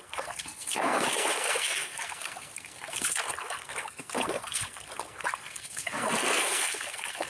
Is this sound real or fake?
fake